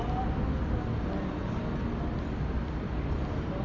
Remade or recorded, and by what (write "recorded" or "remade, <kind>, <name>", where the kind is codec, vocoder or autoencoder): recorded